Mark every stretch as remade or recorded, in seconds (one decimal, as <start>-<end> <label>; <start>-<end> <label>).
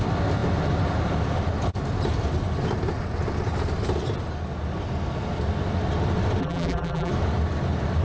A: 0.0-6.4 recorded; 6.4-7.1 remade; 7.1-8.0 recorded